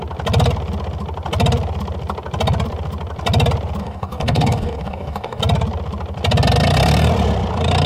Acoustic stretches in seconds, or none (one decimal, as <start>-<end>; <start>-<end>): 0.0-3.8; 5.4-7.9

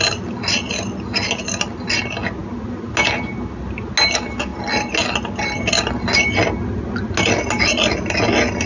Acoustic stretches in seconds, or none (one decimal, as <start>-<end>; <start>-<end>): 0.0-8.7

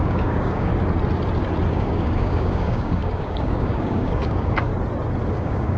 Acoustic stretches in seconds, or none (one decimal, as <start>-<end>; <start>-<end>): 0.7-1.7; 4.7-5.3

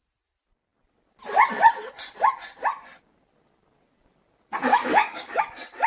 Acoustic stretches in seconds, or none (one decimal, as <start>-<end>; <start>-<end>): 0.0-4.7; 5.4-5.9

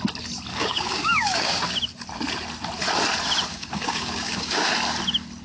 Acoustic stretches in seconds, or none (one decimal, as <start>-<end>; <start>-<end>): 0.0-0.5; 1.6-3.5; 4.7-5.4